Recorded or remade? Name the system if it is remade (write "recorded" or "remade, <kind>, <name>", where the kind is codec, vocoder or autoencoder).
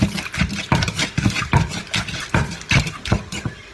remade, vocoder, BigVGAN v2